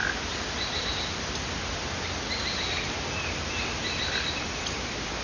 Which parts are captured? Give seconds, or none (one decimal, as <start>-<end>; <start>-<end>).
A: 0.0-5.2